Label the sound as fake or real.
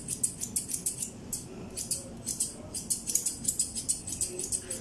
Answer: real